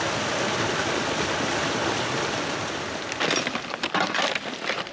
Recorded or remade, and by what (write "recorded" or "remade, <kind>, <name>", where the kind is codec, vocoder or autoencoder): recorded